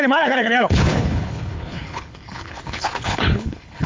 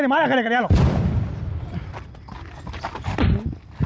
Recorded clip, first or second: second